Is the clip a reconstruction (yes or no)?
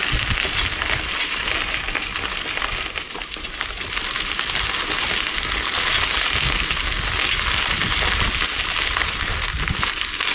no